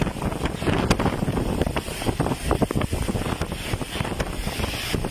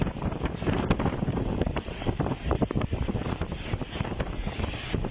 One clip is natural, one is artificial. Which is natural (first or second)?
first